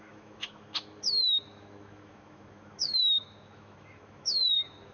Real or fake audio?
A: fake